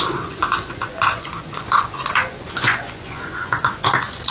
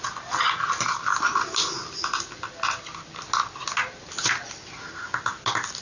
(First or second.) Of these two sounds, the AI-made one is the first